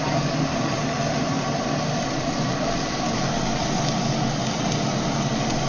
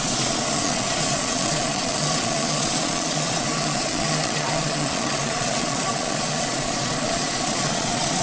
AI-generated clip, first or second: second